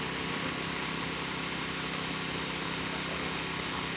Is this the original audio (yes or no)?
yes